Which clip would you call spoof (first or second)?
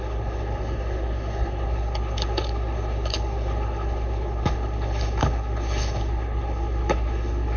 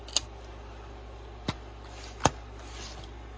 first